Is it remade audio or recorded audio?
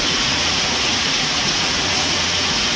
remade